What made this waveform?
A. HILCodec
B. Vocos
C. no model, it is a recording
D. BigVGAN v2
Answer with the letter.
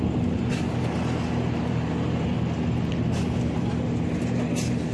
C